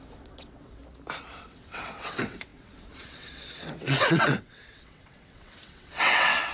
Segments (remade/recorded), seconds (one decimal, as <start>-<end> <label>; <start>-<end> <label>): 0.0-0.8 remade; 0.8-1.3 recorded; 1.3-6.5 remade